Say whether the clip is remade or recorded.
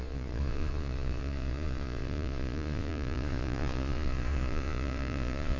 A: remade